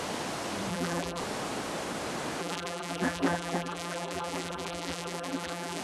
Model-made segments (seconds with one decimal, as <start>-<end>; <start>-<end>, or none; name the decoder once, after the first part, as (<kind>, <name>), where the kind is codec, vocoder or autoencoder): 0.7-1.2 (vocoder, BigVGAN v2); 2.4-5.8